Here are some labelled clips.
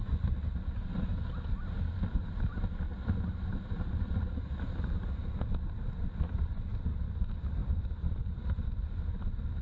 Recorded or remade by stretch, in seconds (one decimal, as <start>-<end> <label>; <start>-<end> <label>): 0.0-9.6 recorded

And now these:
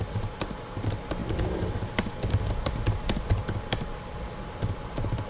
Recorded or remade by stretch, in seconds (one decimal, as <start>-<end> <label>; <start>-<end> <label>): 0.0-1.2 remade; 1.2-4.4 recorded; 4.4-5.3 remade

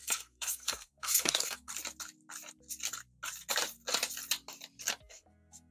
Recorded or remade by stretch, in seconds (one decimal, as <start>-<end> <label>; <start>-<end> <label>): 0.0-1.7 remade; 1.7-5.1 recorded; 5.1-5.7 remade

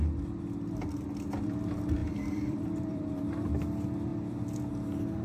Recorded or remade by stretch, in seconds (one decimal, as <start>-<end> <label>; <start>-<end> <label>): 0.0-2.0 recorded; 2.0-3.6 remade; 3.6-4.1 recorded; 4.1-4.7 remade; 4.7-5.2 recorded

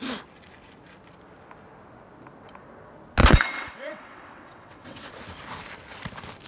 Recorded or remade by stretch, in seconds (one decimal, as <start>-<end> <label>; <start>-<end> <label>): 0.0-3.2 recorded; 3.2-5.1 remade; 5.1-6.5 recorded